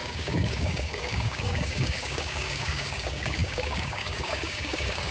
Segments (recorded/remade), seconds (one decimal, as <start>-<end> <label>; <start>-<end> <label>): 0.0-5.1 remade